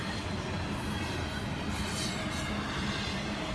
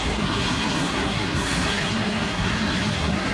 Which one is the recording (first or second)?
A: first